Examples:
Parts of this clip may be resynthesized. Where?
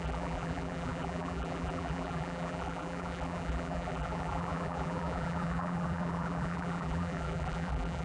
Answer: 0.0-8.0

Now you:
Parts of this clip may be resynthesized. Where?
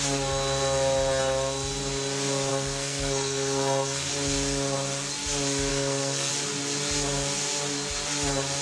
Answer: 2.5-4.1; 5.7-6.3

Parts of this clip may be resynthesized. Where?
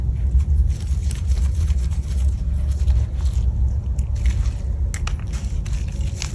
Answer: 1.0-2.9